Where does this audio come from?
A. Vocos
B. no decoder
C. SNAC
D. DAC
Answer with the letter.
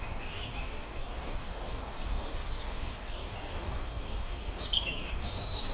D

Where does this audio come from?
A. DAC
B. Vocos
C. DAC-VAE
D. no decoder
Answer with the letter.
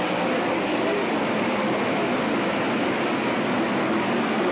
D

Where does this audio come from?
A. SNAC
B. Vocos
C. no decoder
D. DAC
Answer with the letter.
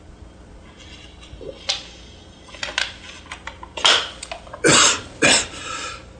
C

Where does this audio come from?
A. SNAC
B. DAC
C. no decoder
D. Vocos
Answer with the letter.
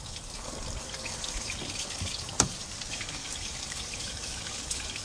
B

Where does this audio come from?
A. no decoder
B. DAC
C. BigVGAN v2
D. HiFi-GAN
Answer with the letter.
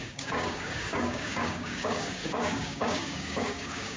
B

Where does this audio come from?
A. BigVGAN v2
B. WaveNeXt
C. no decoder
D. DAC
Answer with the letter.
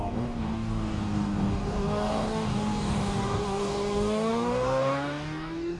D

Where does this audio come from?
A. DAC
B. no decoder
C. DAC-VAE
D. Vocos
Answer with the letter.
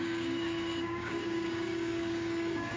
A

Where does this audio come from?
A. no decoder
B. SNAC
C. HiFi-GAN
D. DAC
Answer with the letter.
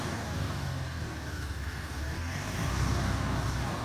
D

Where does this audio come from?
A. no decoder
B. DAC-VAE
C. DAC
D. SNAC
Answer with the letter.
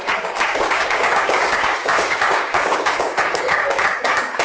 C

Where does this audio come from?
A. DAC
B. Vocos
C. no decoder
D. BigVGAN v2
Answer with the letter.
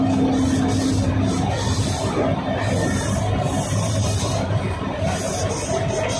C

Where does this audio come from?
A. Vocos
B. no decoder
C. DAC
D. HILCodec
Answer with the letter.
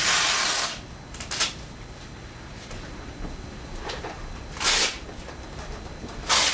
B